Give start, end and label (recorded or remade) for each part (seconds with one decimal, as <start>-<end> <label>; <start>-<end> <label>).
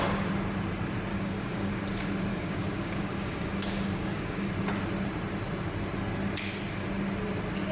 0.0-1.1 recorded; 1.1-1.7 remade; 1.7-2.3 recorded; 2.3-4.5 remade; 4.5-7.7 recorded